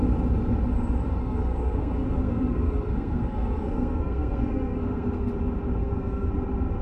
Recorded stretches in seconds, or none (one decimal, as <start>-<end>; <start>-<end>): 0.0-1.2; 5.3-5.8; 6.3-6.8

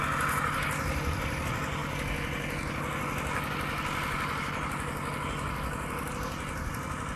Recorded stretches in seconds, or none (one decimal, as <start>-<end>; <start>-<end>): 0.0-7.2

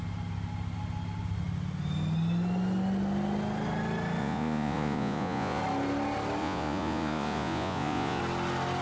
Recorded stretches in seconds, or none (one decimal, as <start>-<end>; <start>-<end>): 0.0-4.2; 5.6-6.4; 8.2-8.8

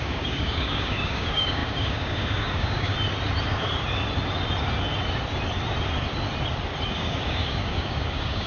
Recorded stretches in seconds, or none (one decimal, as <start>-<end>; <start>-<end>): 2.9-6.9

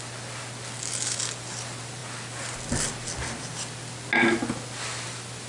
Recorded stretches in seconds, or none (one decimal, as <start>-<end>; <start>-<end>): 0.0-5.5